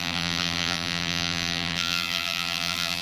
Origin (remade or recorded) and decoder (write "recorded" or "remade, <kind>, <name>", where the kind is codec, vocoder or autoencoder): remade, vocoder, BigVGAN v2